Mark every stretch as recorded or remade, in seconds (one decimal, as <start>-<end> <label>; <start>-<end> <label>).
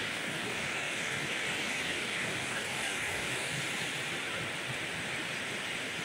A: 0.0-3.6 remade; 3.6-6.0 recorded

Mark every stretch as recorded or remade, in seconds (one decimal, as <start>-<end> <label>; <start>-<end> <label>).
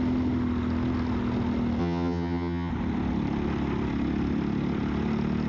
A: 0.0-1.8 recorded; 1.8-2.7 remade; 2.7-5.5 recorded